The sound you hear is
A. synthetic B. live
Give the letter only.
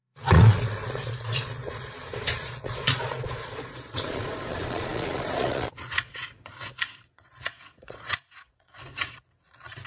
A